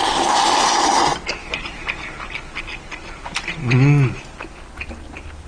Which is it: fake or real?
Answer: real